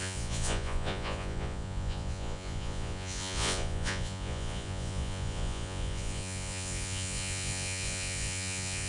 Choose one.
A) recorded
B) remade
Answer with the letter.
B